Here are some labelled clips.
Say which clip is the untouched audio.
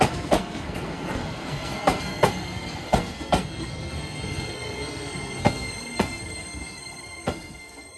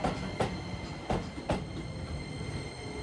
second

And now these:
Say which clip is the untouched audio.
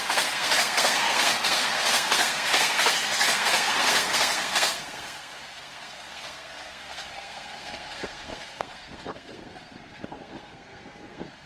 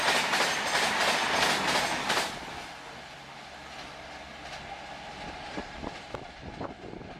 second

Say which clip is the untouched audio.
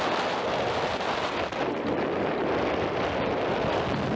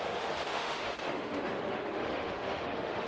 first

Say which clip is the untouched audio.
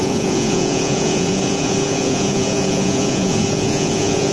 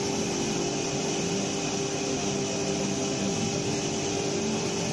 second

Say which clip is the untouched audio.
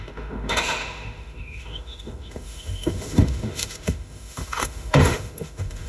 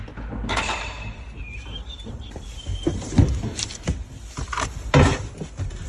second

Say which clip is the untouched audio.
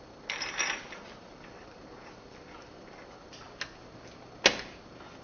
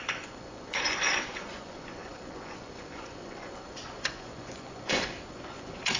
first